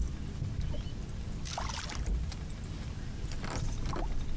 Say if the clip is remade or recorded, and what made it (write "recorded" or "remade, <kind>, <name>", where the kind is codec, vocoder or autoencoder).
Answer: recorded